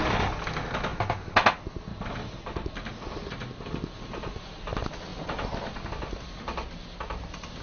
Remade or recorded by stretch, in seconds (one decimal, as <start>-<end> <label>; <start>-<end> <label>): 0.0-1.9 recorded; 1.9-3.0 remade; 3.0-7.6 recorded